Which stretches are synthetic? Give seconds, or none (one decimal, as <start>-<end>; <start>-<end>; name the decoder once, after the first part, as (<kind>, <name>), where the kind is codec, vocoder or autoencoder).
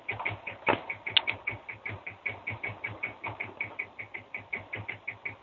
none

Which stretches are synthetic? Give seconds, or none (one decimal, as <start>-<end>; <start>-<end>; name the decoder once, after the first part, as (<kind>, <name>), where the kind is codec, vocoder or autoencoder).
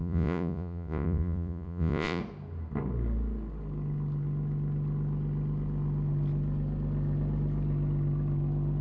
0.0-2.2 (vocoder, Vocos)